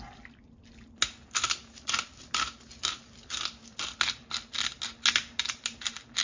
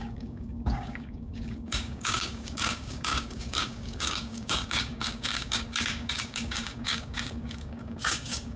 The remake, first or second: second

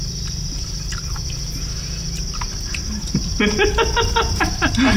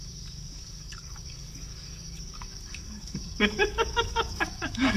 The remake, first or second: second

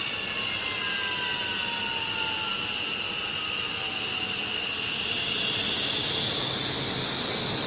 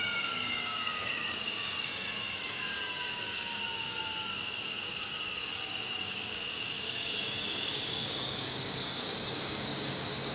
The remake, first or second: second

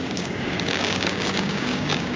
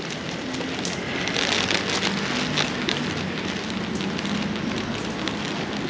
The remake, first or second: first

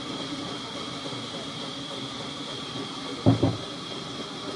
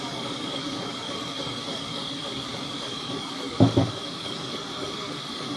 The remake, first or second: second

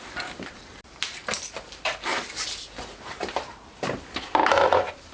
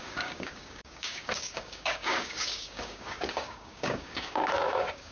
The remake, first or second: second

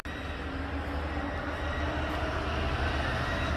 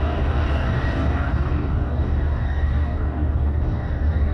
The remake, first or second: second